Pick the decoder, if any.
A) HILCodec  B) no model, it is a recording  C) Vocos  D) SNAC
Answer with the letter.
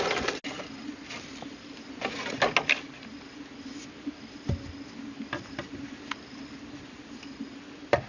B